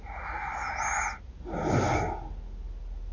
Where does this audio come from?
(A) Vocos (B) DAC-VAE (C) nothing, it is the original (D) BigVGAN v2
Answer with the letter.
C